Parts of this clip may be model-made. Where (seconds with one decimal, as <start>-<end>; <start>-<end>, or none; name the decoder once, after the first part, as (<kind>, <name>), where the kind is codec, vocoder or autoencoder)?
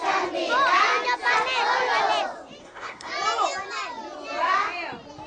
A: 2.6-3.1 (codec, SNAC)